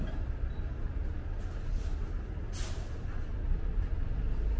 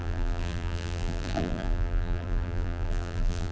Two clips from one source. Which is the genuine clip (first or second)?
first